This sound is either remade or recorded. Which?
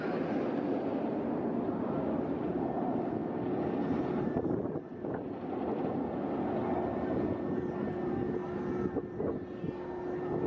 recorded